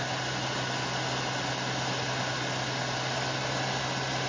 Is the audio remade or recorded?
recorded